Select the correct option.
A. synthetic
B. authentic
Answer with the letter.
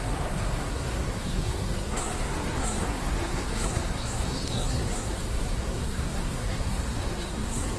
A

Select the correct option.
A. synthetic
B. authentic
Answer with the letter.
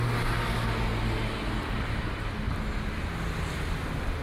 B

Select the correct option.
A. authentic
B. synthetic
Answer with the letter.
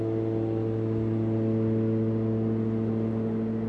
A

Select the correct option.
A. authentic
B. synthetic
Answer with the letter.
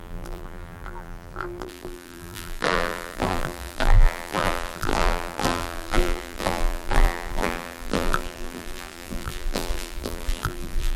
B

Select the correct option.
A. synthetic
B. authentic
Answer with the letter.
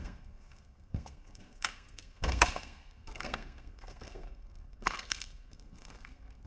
A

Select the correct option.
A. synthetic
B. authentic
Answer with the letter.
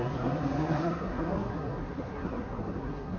A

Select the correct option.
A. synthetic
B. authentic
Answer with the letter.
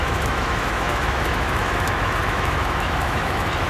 A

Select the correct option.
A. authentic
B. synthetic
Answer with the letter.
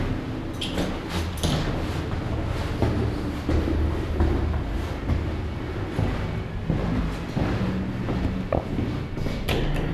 A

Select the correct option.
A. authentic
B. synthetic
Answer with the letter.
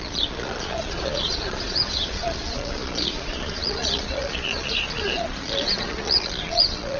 B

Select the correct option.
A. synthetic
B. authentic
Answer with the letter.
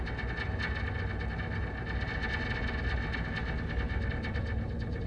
B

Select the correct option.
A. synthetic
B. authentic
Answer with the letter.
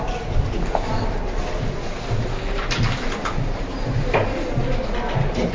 B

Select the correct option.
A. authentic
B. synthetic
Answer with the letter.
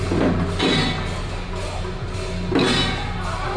A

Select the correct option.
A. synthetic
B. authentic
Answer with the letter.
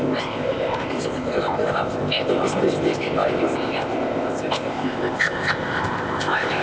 A